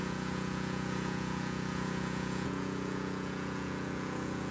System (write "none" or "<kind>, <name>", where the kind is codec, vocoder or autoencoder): vocoder, Vocos